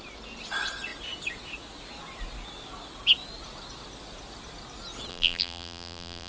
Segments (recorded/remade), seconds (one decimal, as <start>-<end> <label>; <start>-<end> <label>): 0.0-5.1 recorded; 5.1-6.3 remade